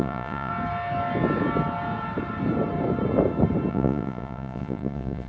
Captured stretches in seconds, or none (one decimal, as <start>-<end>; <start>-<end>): 0.5-3.7